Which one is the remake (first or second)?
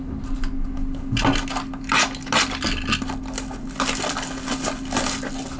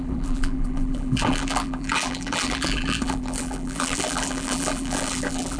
second